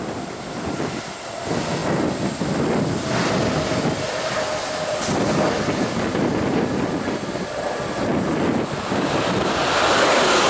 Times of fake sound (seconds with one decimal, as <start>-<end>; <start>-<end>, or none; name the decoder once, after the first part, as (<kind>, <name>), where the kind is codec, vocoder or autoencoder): none